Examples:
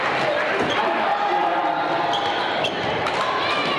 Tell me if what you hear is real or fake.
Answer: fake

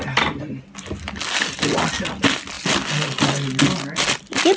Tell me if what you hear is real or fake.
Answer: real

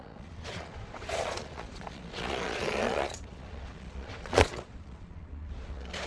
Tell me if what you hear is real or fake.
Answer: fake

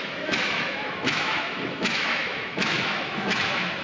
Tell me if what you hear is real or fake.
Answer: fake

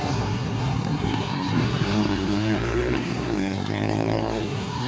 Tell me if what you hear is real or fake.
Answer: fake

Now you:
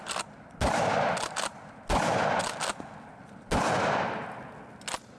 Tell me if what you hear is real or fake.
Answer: real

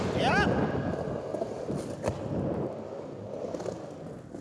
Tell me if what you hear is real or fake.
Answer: real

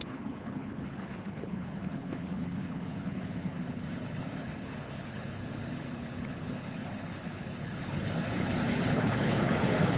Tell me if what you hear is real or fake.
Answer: fake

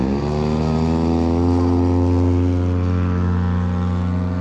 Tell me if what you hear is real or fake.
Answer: real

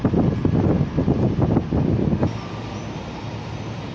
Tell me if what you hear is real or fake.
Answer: real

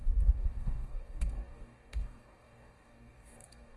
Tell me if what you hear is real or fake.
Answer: fake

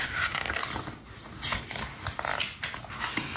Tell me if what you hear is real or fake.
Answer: real